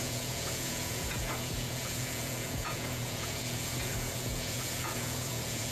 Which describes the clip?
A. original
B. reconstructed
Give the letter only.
B